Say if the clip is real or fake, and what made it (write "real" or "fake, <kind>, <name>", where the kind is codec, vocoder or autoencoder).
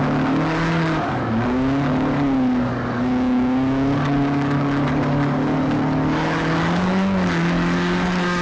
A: fake, codec, DAC